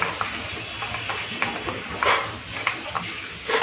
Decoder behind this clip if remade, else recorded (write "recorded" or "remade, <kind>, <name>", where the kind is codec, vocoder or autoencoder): recorded